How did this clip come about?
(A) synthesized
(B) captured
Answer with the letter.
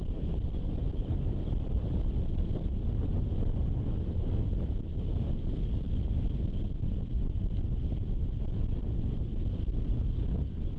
B